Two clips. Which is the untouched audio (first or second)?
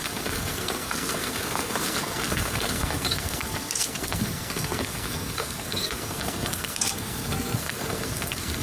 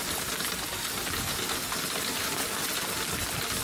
second